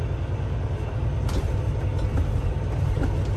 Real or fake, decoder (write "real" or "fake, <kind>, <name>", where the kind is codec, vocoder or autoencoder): real